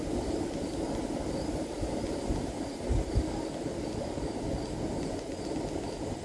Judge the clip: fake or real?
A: real